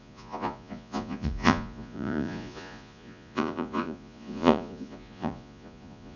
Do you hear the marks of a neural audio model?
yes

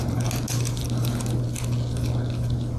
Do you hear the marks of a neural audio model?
no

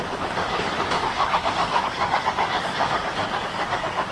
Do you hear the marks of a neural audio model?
yes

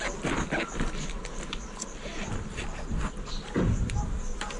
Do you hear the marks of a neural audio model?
no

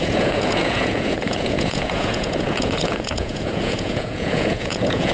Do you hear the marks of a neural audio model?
yes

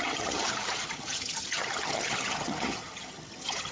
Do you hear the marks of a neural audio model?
yes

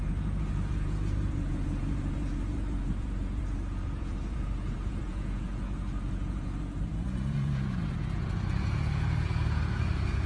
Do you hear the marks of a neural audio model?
yes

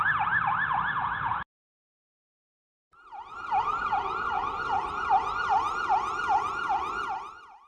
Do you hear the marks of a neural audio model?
no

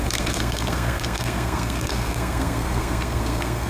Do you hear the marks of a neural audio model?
yes